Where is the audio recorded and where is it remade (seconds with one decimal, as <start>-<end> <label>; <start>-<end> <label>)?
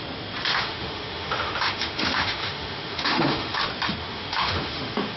0.0-0.5 recorded; 0.5-3.6 remade; 3.6-4.0 recorded; 4.0-5.2 remade